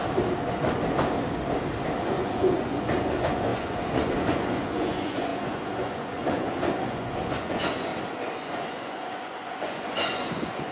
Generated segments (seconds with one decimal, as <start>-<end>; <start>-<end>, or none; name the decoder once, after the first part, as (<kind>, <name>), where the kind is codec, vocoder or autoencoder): 2.0-7.9 (vocoder, Vocos); 8.4-10.7

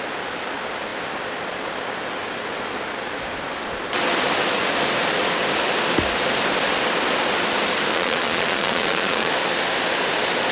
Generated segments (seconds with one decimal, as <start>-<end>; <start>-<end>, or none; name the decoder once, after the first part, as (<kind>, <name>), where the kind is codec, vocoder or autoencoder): 7.9-9.3 (vocoder, Vocos)

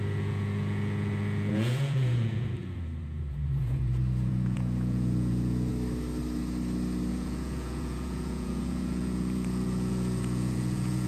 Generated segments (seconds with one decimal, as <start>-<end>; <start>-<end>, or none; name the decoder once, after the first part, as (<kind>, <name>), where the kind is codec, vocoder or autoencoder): 0.0-5.7 (vocoder, Vocos); 7.1-11.1

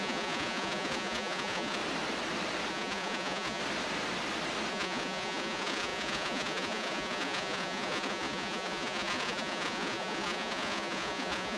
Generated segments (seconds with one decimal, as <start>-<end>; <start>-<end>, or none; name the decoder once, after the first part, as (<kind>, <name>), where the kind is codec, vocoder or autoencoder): 0.0-1.8 (vocoder, Vocos); 2.7-3.6; 4.7-11.6

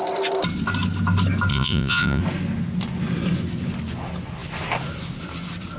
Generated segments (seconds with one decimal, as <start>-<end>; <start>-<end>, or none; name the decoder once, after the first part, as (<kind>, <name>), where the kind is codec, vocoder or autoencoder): 1.5-2.2 (vocoder, Vocos)